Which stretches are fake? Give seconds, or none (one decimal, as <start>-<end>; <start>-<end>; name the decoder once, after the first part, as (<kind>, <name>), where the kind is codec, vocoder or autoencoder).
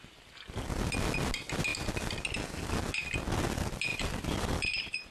3.9-5.1 (vocoder, BigVGAN v2)